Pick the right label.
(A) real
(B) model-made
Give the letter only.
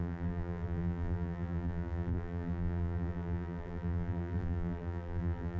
B